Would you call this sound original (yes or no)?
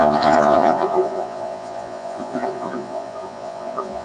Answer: no